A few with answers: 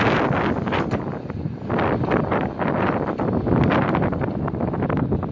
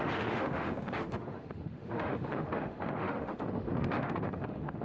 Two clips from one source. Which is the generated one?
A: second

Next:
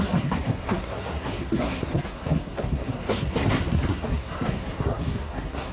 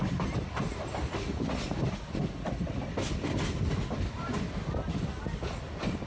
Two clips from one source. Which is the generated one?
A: first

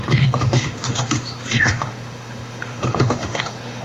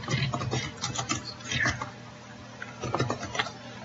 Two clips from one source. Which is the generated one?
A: first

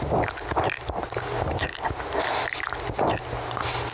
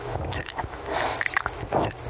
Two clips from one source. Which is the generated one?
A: second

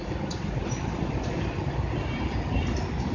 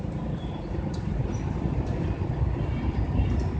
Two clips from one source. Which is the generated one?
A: second